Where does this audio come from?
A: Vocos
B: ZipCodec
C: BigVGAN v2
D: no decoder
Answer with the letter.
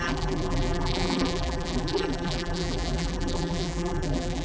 C